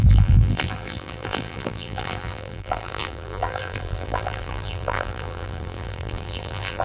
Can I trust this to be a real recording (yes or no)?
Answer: no